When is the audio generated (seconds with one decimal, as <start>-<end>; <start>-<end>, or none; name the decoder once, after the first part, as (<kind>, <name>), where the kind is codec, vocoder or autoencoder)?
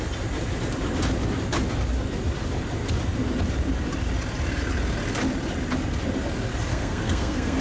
6.7-7.6 (codec, SNAC)